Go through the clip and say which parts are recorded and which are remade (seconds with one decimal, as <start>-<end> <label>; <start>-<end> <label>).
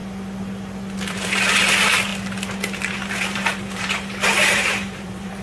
0.0-1.1 recorded; 1.1-2.1 remade; 2.1-2.9 recorded; 2.9-5.4 remade